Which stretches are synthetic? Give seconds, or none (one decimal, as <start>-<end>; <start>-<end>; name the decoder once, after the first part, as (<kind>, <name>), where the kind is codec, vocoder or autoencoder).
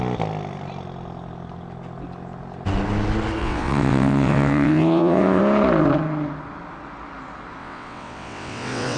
3.4-5.4 (vocoder, WaveNeXt); 7.6-9.0